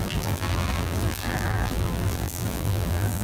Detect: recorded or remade remade